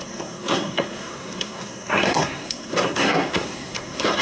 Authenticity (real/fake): fake